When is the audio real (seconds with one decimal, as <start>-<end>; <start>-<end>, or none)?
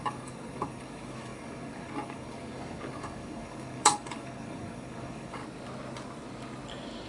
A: 5.4-7.1